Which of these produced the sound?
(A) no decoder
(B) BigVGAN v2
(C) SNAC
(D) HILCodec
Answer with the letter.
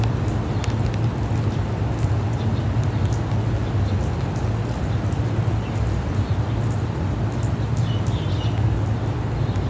A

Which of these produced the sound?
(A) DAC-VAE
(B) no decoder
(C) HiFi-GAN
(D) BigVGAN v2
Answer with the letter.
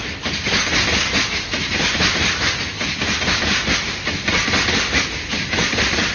B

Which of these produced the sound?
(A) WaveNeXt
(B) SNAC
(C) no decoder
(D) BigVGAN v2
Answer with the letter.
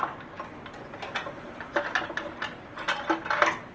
C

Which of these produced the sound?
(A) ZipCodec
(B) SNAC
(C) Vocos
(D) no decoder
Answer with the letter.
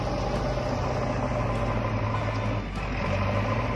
D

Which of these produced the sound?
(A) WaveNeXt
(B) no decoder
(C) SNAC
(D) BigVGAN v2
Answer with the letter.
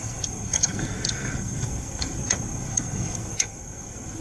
C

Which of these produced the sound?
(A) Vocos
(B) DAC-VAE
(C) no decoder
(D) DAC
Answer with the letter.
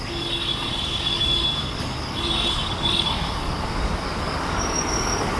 D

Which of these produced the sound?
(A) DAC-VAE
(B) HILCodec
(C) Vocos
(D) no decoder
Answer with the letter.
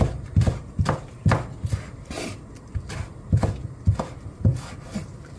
D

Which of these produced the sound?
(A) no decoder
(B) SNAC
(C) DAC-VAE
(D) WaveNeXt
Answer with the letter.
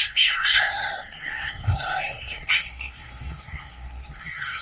B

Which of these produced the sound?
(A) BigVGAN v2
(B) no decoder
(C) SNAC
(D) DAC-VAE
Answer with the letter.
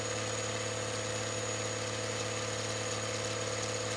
B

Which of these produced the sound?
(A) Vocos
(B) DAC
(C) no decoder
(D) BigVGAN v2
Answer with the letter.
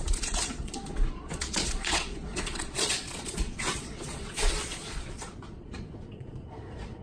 A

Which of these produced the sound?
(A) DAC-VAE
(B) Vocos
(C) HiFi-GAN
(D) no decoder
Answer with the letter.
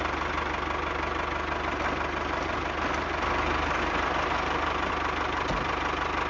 D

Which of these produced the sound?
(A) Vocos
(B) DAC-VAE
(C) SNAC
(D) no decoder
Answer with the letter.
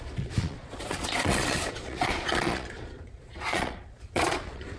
A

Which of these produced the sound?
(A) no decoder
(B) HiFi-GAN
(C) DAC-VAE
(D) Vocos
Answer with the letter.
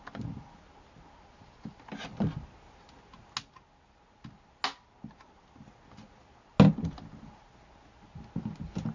A